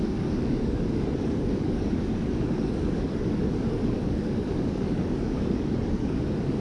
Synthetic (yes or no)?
yes